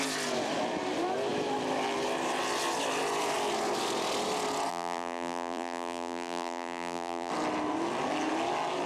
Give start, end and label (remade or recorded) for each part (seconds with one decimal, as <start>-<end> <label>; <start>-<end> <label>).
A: 0.0-4.7 recorded; 4.7-7.3 remade; 7.3-8.9 recorded